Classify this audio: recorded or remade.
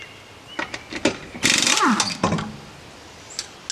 recorded